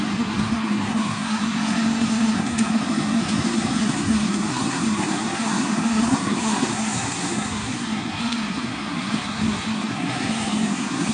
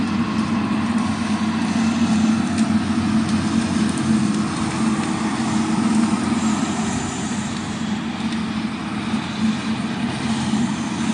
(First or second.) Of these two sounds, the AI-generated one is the first